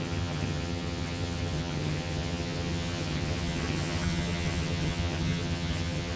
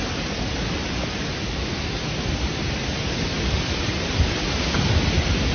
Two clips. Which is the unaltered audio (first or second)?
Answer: second